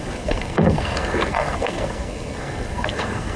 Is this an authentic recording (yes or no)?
no